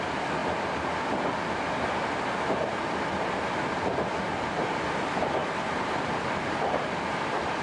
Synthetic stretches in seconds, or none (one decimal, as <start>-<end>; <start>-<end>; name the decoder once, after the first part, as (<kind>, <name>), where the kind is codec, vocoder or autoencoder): 0.0-0.4 (vocoder, BigVGAN v2); 4.9-7.6